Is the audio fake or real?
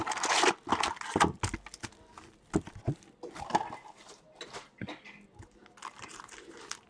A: real